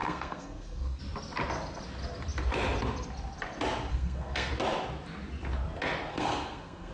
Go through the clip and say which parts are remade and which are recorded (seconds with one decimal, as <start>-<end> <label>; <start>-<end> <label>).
0.0-1.0 remade; 1.0-3.9 recorded; 3.9-4.5 remade; 4.5-6.1 recorded; 6.1-6.9 remade